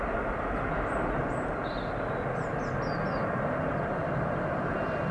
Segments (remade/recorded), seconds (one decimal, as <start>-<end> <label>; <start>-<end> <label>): 0.0-5.1 recorded